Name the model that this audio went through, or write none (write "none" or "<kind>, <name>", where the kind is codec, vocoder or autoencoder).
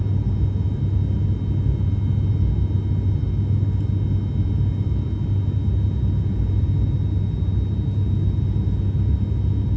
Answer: none